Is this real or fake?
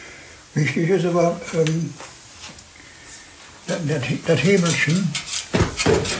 real